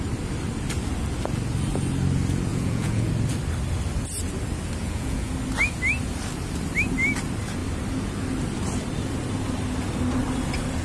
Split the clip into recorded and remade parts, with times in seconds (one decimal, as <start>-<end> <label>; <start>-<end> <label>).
0.0-2.5 recorded; 2.5-3.1 remade; 3.1-4.8 recorded; 4.8-5.3 remade; 5.3-10.8 recorded